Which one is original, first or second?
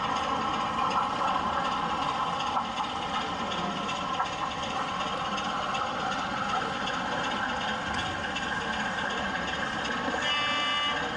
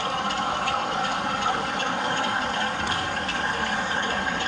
first